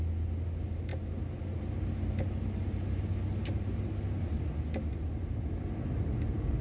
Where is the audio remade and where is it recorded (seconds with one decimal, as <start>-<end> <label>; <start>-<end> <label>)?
0.0-6.6 recorded